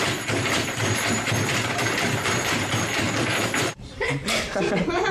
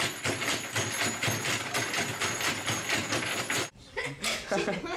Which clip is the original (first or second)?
second